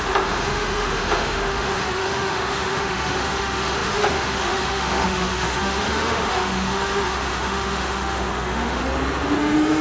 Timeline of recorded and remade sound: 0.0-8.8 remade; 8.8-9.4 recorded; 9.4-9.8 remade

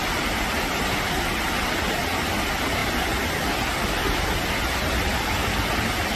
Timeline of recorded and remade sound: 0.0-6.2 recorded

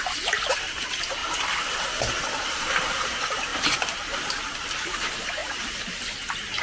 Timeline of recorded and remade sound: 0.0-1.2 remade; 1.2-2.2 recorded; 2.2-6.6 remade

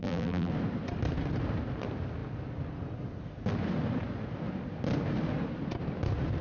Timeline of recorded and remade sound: 0.0-0.5 remade; 0.5-6.4 recorded

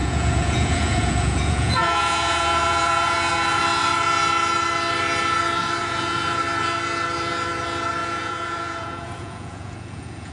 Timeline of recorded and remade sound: 0.0-3.6 remade; 3.6-5.8 recorded; 5.8-6.4 remade; 6.4-8.0 recorded; 8.0-10.3 remade

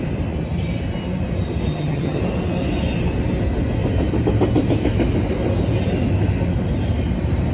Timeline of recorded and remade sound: 0.0-1.7 recorded; 1.7-2.2 remade; 2.2-7.5 recorded